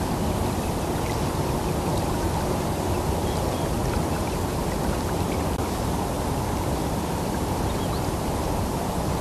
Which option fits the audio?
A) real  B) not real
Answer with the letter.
A